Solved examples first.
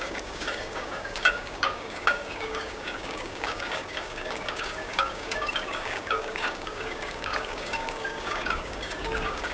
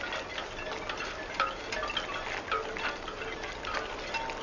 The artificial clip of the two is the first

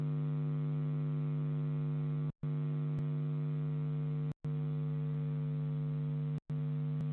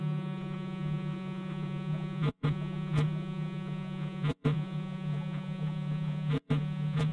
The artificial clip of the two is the second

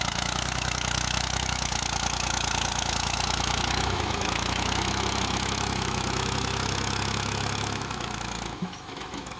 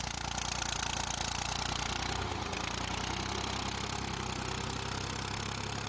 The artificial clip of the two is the first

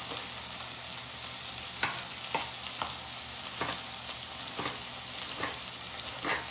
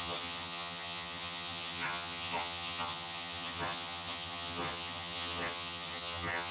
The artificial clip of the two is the second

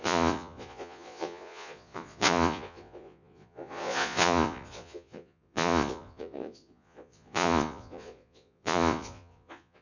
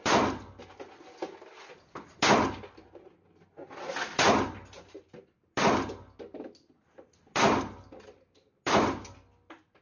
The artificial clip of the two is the first